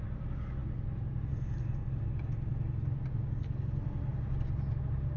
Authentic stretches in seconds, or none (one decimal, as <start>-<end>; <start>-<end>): 0.0-5.2

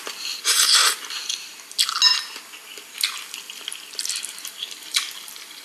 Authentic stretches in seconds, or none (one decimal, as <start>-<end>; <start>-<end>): 0.0-5.6

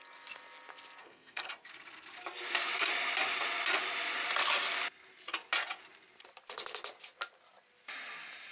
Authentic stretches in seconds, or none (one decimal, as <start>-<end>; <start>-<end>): 0.0-1.0; 1.5-8.5

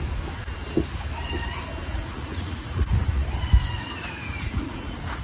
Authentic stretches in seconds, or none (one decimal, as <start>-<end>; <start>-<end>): 0.0-1.9

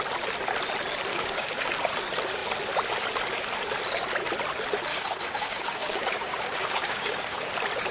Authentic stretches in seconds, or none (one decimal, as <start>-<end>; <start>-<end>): 0.0-1.1; 1.6-4.9; 7.5-7.9

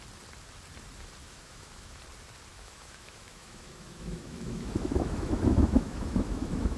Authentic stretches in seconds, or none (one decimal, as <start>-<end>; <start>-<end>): 0.0-1.2; 2.0-2.5